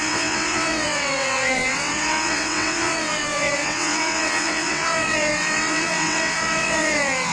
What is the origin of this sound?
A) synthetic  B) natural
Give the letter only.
A